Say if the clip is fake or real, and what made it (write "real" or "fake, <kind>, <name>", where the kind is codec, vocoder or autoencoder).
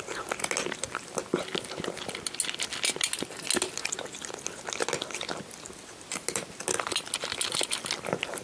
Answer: real